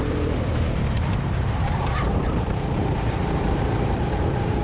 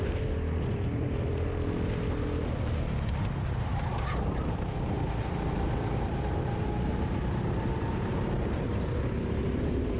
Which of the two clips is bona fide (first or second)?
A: second